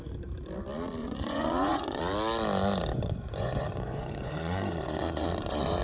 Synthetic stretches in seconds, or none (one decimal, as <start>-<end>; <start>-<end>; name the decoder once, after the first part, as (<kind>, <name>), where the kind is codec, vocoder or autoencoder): 1.0-2.0 (vocoder, Vocos); 2.9-5.8